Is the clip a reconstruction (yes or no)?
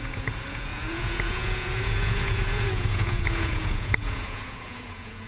yes